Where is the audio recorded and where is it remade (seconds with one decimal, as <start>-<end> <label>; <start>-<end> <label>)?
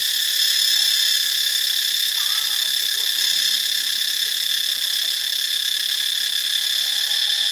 0.0-4.5 remade; 4.5-7.5 recorded